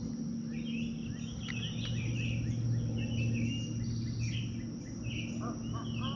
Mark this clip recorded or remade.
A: recorded